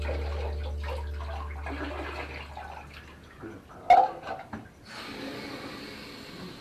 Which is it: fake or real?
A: real